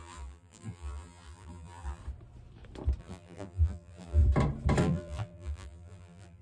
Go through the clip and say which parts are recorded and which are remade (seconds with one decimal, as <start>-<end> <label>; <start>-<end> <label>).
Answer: 0.0-2.0 remade; 2.0-3.0 recorded; 3.0-4.2 remade; 4.2-4.8 recorded; 4.8-6.4 remade